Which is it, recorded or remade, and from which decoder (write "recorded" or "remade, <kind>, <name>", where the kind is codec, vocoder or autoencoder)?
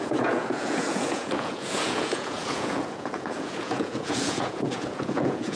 remade, vocoder, Vocos